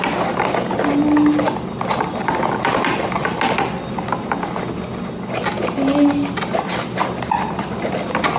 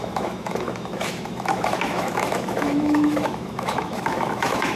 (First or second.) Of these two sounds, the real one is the first